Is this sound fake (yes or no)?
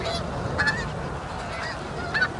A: no